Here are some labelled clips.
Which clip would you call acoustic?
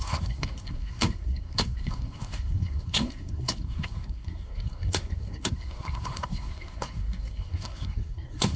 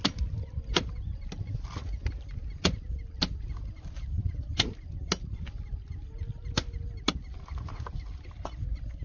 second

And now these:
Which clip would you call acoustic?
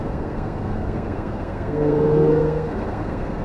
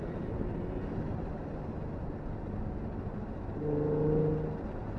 second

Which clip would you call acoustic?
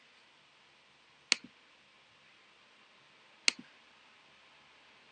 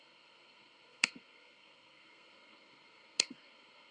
first